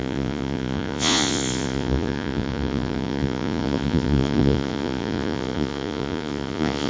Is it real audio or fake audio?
fake